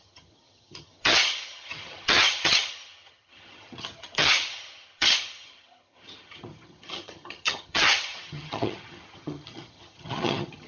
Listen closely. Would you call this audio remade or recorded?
remade